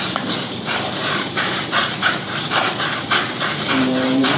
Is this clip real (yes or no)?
no